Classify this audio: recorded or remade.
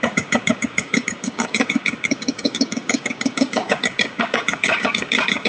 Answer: remade